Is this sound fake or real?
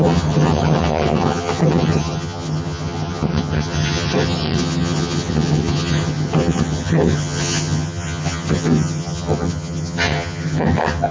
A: fake